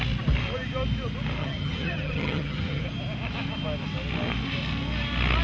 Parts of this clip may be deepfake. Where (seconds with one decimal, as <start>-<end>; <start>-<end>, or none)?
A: 1.4-2.8